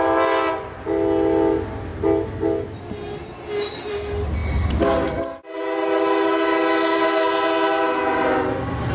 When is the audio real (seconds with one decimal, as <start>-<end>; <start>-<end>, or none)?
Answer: 0.0-8.9